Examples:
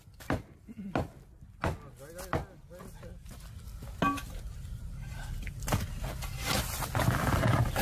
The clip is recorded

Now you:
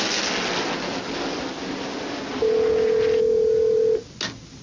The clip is recorded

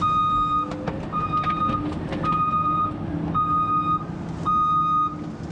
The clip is recorded